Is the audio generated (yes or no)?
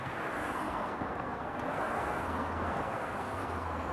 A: yes